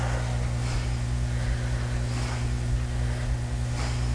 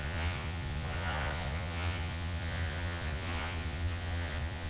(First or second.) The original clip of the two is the first